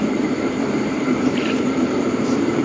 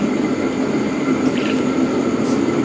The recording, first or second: second